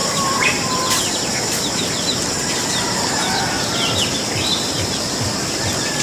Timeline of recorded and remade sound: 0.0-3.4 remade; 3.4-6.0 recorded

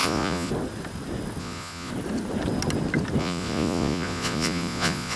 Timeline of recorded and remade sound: 0.0-0.5 remade; 0.5-1.4 recorded; 1.4-1.9 remade; 1.9-3.2 recorded; 3.2-5.2 remade

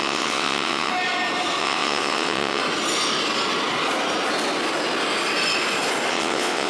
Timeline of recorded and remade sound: 0.0-0.9 remade; 0.9-1.6 recorded; 1.6-2.6 remade; 2.6-6.1 recorded; 6.1-6.7 remade

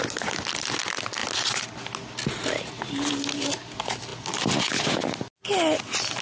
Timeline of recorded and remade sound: 0.0-6.2 recorded

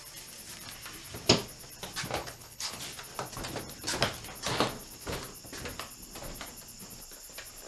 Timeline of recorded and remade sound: 0.0-2.2 recorded; 2.2-2.8 remade; 2.8-7.7 recorded